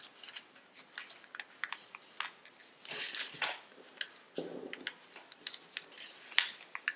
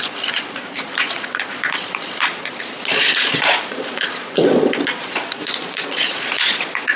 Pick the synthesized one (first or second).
second